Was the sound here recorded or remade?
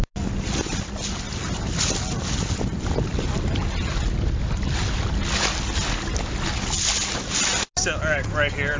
recorded